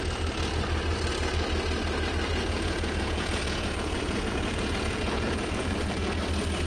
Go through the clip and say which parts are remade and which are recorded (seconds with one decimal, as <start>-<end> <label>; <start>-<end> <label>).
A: 0.0-2.3 recorded; 2.3-6.1 remade; 6.1-6.7 recorded